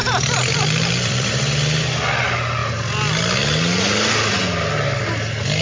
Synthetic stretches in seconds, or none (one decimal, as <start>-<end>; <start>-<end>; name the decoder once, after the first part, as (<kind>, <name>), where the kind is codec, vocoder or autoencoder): 0.0-1.3 (vocoder, BigVGAN v2)